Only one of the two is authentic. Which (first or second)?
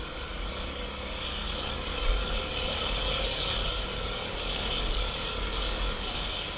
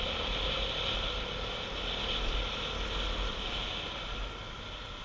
second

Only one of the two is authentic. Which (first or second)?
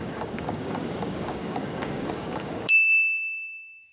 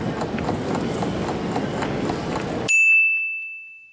second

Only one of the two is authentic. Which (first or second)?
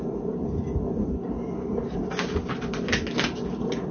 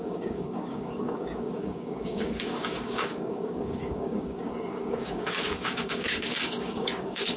first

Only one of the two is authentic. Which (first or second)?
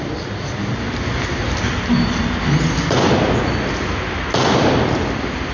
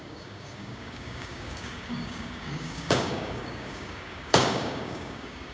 first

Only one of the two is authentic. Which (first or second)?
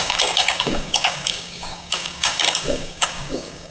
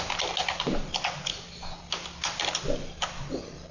second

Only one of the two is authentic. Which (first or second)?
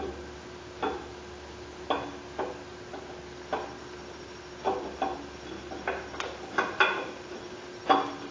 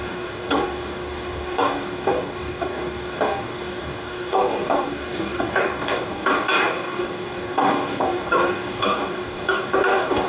first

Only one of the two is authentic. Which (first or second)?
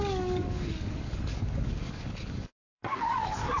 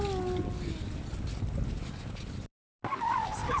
second